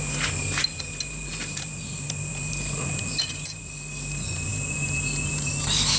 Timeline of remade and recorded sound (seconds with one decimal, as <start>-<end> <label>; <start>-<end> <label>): 0.0-6.0 recorded